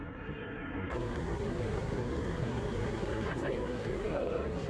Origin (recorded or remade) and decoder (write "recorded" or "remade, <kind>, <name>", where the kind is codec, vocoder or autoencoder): remade, codec, SNAC